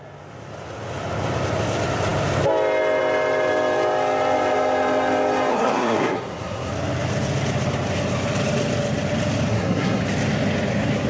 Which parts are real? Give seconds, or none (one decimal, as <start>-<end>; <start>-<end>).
0.0-5.5; 6.7-9.5; 10.0-11.1